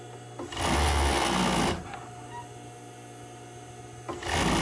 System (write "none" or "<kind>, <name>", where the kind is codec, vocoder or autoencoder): none